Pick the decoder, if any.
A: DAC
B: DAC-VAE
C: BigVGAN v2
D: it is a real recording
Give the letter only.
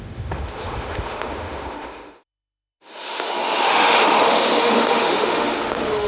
B